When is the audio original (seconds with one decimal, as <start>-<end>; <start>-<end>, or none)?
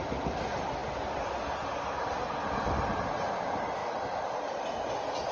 0.0-5.3